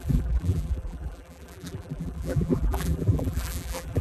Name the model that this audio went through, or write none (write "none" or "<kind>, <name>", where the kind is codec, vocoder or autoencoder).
vocoder, BigVGAN v2